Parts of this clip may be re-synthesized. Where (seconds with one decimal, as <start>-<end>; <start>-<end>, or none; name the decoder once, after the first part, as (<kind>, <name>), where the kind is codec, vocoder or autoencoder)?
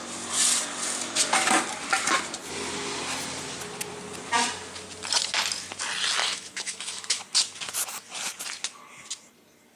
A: 6.2-7.2 (autoencoder, DAC-VAE)